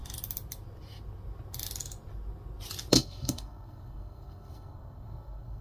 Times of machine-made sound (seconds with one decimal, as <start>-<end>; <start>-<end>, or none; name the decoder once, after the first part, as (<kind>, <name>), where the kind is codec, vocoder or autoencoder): 2.9-5.6 (codec, SNAC)